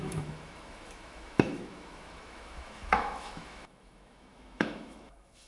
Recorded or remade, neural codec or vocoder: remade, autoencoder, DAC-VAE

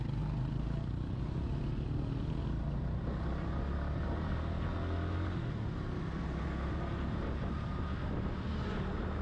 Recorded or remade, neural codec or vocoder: recorded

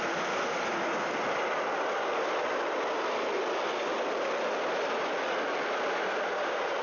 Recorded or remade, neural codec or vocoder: recorded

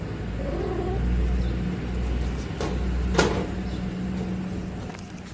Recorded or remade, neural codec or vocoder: recorded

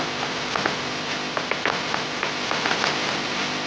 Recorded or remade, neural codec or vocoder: recorded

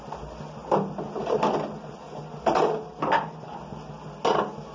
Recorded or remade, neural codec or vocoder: recorded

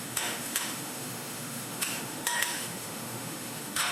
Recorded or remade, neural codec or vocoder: remade, autoencoder, DAC-VAE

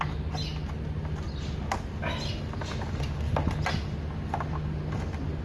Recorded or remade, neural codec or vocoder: recorded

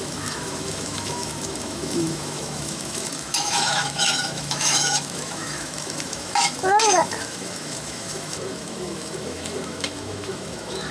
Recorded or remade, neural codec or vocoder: remade, autoencoder, DAC-VAE